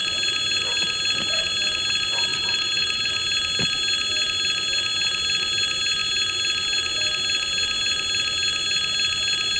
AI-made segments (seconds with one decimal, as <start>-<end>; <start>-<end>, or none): 2.3-3.1